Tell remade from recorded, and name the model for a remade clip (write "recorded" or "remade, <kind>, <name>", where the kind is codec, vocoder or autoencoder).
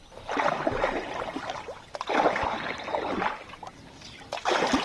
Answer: recorded